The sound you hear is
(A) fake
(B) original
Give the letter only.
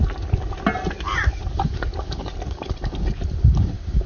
B